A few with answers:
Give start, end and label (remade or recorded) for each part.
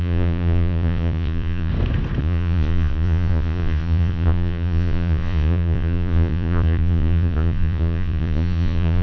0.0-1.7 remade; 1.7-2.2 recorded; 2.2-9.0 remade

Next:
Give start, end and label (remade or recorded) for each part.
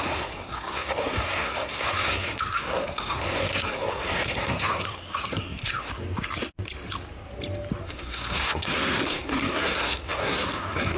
0.0-5.9 remade; 5.9-7.8 recorded; 7.8-11.0 remade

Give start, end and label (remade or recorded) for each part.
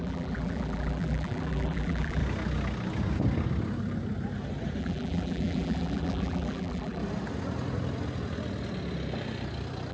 0.0-2.2 remade; 2.2-4.8 recorded; 4.8-7.0 remade; 7.0-9.9 recorded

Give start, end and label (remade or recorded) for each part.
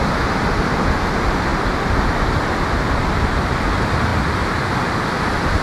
0.0-1.5 recorded; 1.5-2.7 remade; 2.7-4.1 recorded; 4.1-5.1 remade; 5.1-5.6 recorded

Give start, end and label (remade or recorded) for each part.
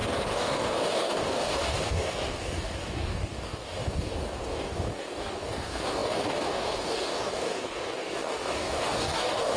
0.0-9.6 remade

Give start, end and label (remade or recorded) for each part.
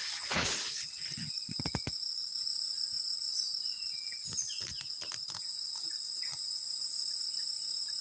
0.0-4.3 remade; 4.3-8.0 recorded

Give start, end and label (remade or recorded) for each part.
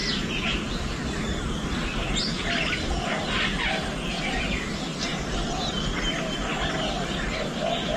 0.0-4.4 remade; 4.4-8.0 recorded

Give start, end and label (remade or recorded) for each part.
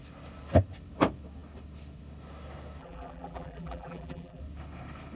0.0-2.8 recorded; 2.8-4.4 remade; 4.4-5.2 recorded